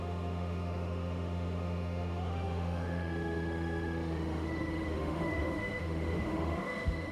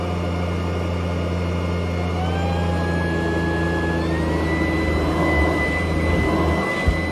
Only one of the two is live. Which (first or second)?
second